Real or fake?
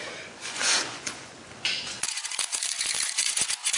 fake